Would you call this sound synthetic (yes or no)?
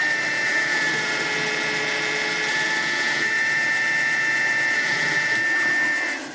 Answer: no